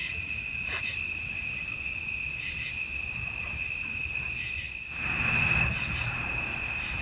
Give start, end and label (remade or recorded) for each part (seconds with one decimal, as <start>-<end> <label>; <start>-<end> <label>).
0.0-0.8 remade; 0.8-7.0 recorded